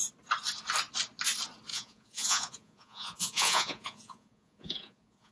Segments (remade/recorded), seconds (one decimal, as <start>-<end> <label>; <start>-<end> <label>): 0.0-1.7 recorded; 1.7-5.3 remade